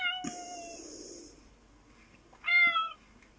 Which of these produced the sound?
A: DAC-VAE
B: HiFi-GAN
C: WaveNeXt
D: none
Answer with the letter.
D